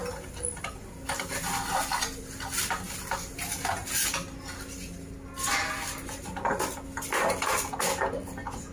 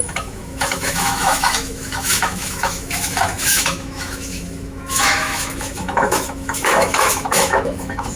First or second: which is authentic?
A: first